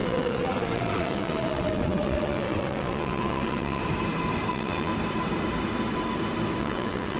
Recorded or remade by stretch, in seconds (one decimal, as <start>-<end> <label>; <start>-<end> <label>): 0.0-3.8 remade; 3.8-4.5 recorded; 4.5-4.9 remade; 4.9-6.6 recorded; 6.6-7.2 remade